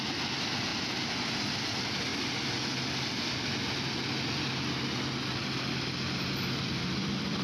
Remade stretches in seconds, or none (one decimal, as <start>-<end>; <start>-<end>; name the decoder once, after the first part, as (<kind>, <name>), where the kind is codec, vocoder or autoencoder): none